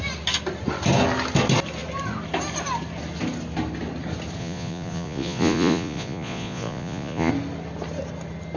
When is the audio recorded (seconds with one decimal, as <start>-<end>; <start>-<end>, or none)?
0.0-4.4; 7.3-8.6